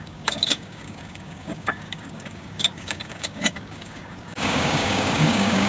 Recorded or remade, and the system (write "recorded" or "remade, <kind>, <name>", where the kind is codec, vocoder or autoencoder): remade, codec, DAC